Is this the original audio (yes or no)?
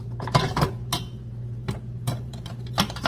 no